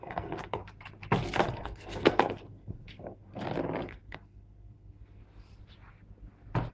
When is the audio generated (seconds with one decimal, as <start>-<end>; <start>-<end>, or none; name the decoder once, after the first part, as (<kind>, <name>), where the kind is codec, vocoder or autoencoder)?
0.0-0.6 (codec, SNAC); 1.5-3.3; 3.9-5.2